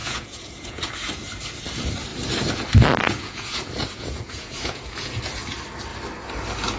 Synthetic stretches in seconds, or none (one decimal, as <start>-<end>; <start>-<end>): 0.0-0.9; 3.0-5.2